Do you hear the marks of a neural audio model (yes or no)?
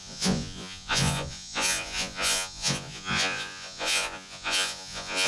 yes